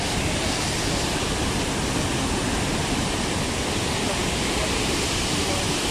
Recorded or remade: remade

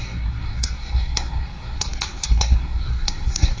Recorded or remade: remade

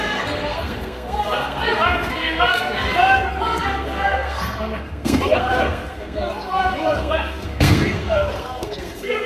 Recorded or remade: remade